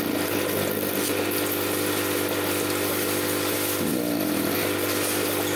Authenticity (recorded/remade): recorded